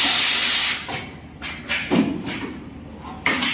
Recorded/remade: recorded